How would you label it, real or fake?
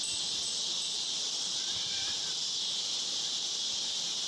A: real